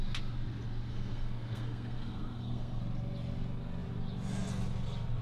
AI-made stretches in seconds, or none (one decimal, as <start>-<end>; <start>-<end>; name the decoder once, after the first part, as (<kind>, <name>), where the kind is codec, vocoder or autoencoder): 0.9-2.8 (codec, SNAC)